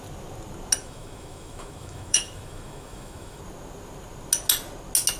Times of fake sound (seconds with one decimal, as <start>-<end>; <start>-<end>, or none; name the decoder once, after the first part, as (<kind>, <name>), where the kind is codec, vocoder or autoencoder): 0.8-3.4 (autoencoder, DAC-VAE)